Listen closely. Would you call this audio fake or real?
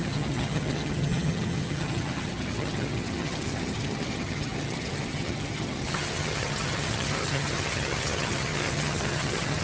fake